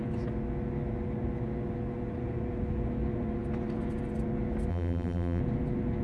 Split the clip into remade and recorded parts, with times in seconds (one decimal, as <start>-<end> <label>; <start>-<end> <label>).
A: 0.0-4.7 recorded; 4.7-5.4 remade; 5.4-6.0 recorded

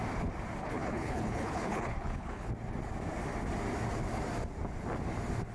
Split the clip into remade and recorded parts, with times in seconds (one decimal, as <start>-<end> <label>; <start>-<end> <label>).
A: 0.0-0.6 recorded; 0.6-2.5 remade; 2.5-5.5 recorded

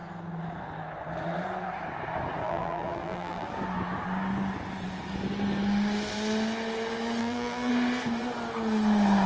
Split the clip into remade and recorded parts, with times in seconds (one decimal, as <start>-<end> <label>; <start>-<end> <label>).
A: 0.0-2.4 recorded; 2.4-3.5 remade; 3.5-7.2 recorded; 7.2-7.7 remade; 7.7-9.3 recorded

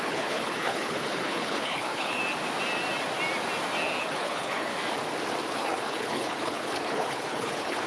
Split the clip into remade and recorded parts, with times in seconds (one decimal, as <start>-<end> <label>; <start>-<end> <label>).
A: 0.0-2.2 remade; 2.2-4.0 recorded; 4.0-4.7 remade; 4.7-5.5 recorded; 5.5-7.9 remade

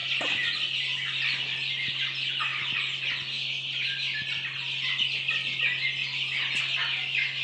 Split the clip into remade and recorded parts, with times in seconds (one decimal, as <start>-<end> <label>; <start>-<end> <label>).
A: 0.0-1.7 remade; 1.7-2.5 recorded; 2.5-6.6 remade; 6.6-7.4 recorded

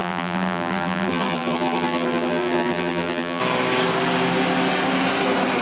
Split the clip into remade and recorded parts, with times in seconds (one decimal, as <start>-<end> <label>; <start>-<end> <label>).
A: 0.0-3.4 remade; 3.4-5.6 recorded

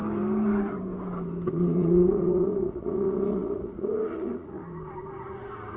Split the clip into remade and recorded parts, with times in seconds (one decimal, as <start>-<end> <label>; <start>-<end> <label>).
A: 0.0-1.5 recorded; 1.5-4.6 remade; 4.6-5.8 recorded

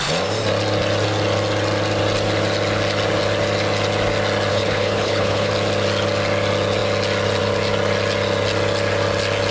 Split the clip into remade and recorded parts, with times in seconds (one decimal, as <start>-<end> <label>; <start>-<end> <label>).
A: 0.0-4.5 recorded; 4.5-5.5 remade; 5.5-9.5 recorded